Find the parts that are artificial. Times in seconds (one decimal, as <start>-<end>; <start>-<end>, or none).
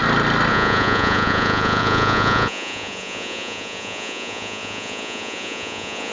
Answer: 0.5-6.1